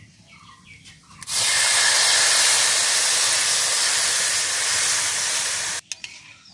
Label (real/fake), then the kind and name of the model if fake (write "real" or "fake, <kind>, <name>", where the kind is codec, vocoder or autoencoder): real